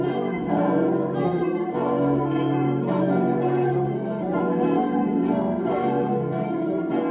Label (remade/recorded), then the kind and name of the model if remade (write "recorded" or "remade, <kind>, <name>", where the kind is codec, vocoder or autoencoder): remade, codec, SNAC